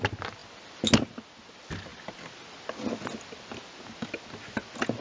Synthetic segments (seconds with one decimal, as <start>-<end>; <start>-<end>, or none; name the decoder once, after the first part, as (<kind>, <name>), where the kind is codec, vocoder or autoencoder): none